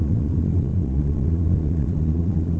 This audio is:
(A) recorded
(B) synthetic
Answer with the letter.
B